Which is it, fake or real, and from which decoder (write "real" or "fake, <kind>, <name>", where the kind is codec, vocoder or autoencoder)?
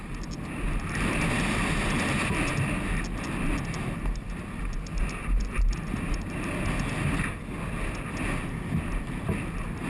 real